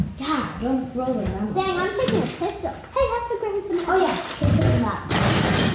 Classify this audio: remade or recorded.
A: recorded